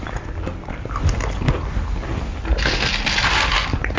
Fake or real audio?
real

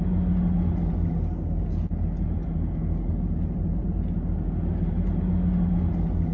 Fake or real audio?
real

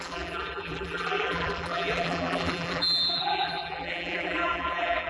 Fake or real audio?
fake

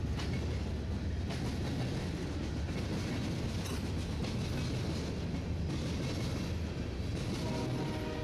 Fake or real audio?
real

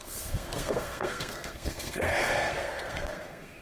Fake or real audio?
fake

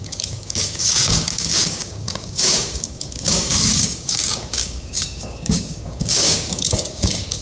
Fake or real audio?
fake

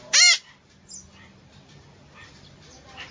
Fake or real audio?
fake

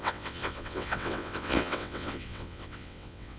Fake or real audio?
fake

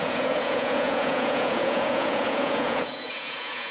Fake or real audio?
fake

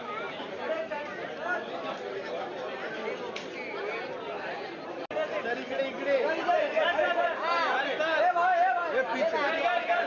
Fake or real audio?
real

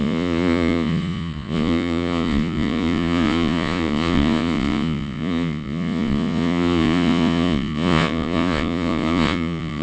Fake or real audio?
fake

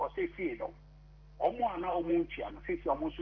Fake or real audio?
real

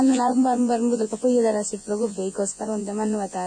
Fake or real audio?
fake